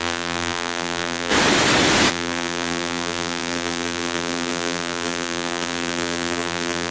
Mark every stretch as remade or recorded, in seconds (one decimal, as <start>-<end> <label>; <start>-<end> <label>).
0.0-1.3 remade; 1.3-2.1 recorded; 2.1-6.9 remade